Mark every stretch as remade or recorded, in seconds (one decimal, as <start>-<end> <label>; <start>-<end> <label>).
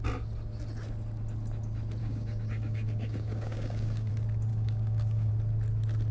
0.0-2.0 recorded; 2.0-4.1 remade; 4.1-4.5 recorded; 4.5-5.3 remade; 5.3-6.1 recorded